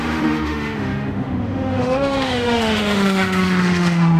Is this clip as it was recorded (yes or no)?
no